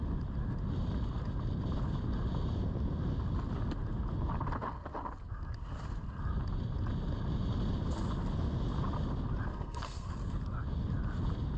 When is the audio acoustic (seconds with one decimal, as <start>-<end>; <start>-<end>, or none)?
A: 0.0-9.5; 10.2-11.6